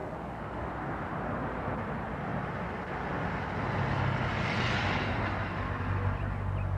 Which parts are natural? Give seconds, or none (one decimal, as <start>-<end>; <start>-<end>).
0.7-6.8